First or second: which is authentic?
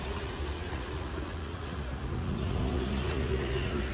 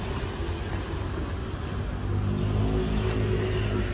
second